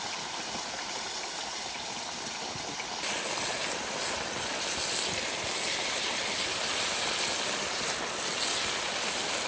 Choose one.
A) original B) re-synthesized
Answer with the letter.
A